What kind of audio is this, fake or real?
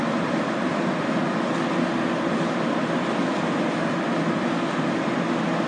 real